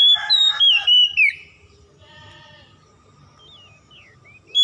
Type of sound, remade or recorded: recorded